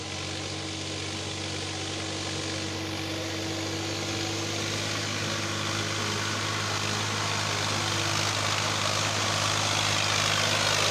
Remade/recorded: recorded